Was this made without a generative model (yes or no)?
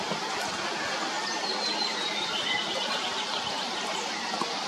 yes